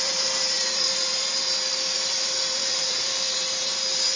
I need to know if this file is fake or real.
fake